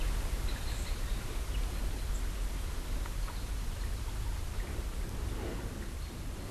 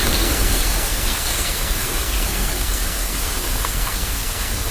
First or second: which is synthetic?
second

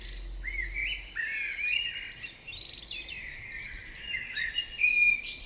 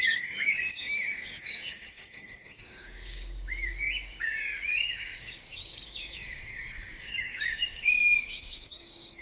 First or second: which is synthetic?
second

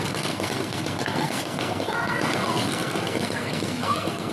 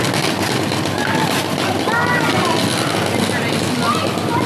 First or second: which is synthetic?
first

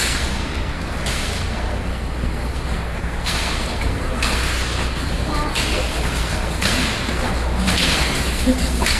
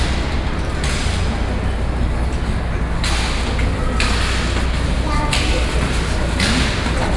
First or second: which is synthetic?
first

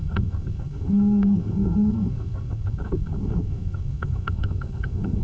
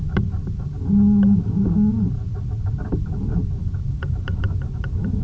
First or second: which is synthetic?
first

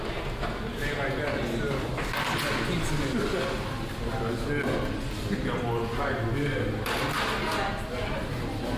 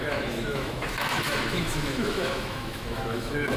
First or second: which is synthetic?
second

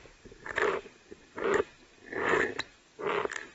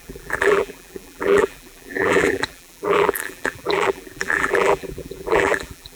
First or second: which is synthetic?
second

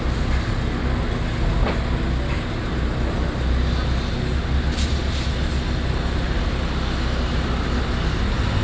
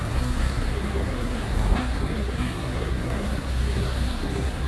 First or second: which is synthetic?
second